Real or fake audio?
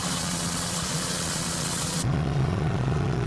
fake